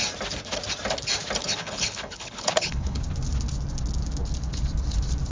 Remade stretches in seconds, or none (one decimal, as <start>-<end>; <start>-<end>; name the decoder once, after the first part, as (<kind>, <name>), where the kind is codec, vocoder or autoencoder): 1.4-3.0 (codec, HILCodec)